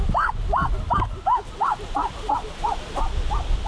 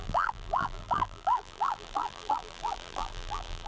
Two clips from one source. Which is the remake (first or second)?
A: second